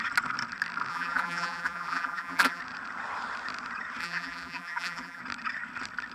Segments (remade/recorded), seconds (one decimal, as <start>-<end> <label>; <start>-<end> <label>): 0.0-0.9 recorded; 0.9-2.6 remade; 2.6-4.0 recorded; 4.0-5.2 remade; 5.2-6.1 recorded